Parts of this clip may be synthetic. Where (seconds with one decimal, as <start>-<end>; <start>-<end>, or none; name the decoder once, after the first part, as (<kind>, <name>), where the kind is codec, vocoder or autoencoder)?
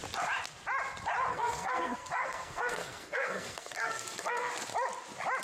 1.3-4.5 (codec, SNAC)